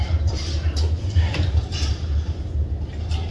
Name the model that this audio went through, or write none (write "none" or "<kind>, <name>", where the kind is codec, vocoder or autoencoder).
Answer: vocoder, BigVGAN v2